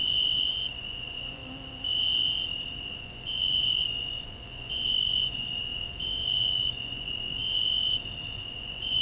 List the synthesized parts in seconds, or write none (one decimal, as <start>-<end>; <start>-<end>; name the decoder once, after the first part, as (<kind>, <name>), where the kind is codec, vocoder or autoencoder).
0.0-1.4 (vocoder, Vocos); 3.0-5.7; 6.2-7.4; 8.3-9.0